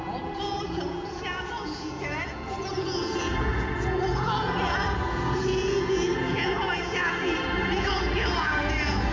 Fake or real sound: fake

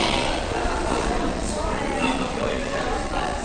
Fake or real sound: fake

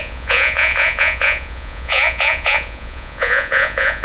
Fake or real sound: fake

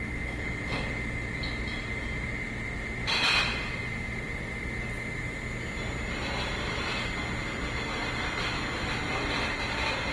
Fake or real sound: real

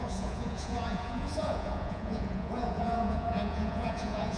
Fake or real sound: fake